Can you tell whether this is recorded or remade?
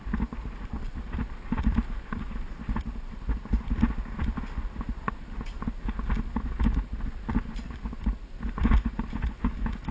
recorded